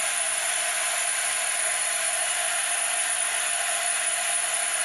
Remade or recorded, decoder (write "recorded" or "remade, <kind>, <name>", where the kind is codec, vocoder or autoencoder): recorded